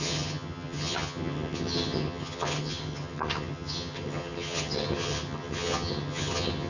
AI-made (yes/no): yes